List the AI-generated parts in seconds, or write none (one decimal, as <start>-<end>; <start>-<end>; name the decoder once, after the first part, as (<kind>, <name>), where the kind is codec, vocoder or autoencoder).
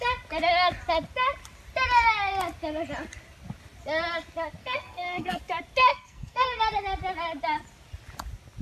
4.6-5.4 (codec, SNAC); 5.9-6.6